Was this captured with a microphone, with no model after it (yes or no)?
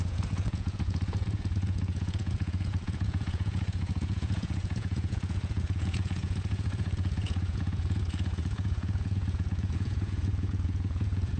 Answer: no